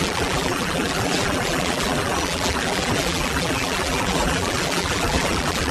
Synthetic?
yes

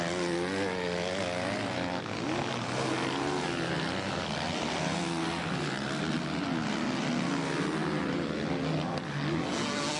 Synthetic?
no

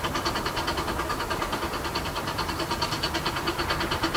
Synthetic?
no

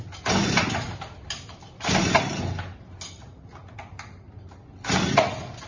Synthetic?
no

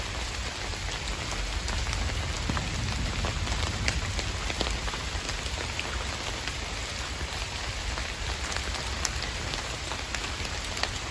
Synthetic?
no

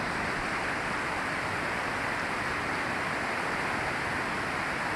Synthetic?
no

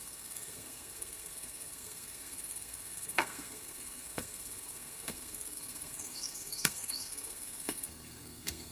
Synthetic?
yes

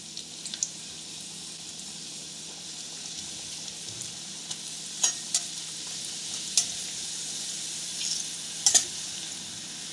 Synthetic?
no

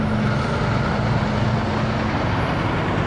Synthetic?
no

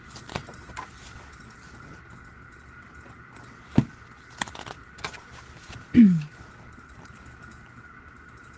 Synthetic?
no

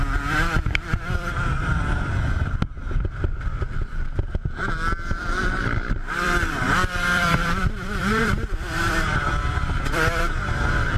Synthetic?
yes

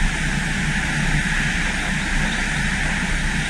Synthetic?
no